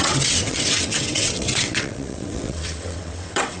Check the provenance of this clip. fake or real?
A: fake